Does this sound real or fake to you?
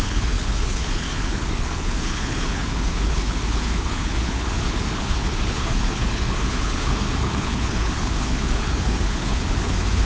fake